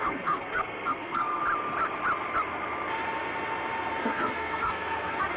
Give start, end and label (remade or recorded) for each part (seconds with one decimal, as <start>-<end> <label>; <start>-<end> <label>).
0.0-1.4 remade; 1.4-4.0 recorded; 4.0-5.4 remade